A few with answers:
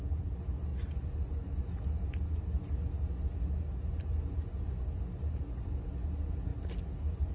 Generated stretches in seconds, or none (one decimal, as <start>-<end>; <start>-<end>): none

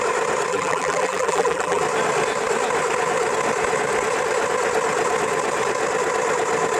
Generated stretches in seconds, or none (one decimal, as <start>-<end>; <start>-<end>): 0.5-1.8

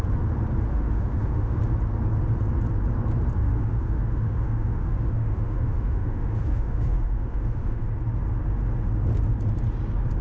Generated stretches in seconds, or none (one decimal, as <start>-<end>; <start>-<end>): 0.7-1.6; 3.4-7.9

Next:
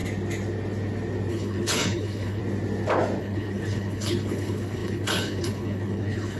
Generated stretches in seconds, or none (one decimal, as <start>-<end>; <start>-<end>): 1.3-2.4; 3.2-6.4

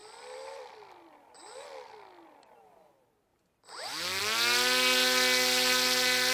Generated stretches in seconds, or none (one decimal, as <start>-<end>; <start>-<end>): 0.0-1.3; 3.3-4.2

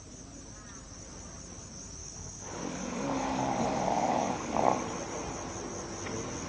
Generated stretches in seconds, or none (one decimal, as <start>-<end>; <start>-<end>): 2.0-4.8